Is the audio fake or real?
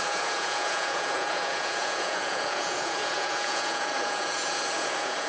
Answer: fake